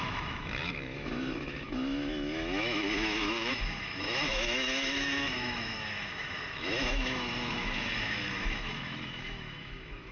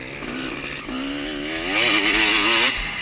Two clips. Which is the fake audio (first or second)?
first